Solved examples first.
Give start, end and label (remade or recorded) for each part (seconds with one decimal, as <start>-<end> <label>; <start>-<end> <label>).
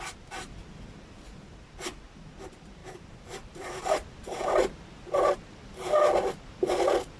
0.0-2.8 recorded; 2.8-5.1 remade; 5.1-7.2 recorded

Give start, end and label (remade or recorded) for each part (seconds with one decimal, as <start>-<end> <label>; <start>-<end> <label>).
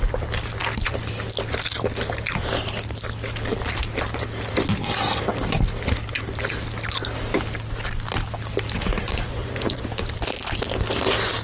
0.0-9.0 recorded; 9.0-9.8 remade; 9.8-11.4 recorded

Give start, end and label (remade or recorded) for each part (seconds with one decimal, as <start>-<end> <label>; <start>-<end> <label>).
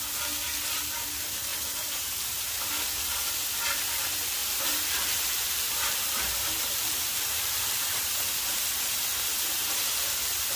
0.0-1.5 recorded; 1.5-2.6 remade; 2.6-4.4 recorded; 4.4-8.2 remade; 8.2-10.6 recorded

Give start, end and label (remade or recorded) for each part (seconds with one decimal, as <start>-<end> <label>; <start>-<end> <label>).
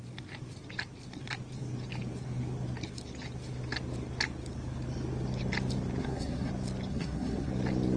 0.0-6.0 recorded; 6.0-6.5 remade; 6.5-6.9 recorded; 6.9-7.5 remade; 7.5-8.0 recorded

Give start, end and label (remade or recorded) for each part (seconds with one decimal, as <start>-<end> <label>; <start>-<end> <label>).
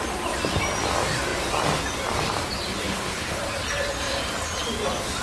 0.0-2.8 recorded; 2.8-3.4 remade; 3.4-5.2 recorded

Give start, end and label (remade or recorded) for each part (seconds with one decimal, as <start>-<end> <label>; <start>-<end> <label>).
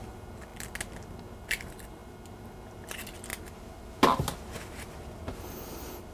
0.0-6.1 recorded